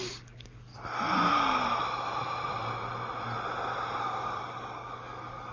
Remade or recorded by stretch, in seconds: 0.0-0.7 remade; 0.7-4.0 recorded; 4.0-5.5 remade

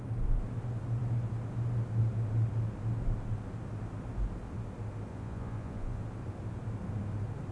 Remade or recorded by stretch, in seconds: 0.0-5.1 recorded; 5.1-6.0 remade; 6.0-7.5 recorded

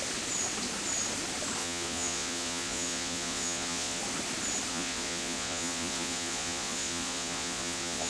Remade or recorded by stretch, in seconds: 0.0-1.6 recorded; 1.6-4.0 remade; 4.0-4.7 recorded; 4.7-8.1 remade

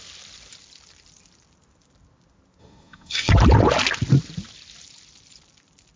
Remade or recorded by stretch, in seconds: 0.0-2.6 recorded; 2.6-3.3 remade; 3.3-6.0 recorded